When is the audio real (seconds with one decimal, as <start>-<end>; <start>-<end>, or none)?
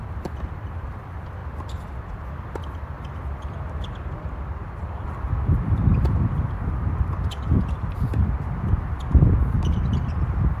1.4-4.8